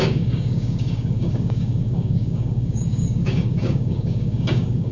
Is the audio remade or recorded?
remade